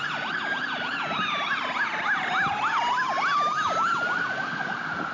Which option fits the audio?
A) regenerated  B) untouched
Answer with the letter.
A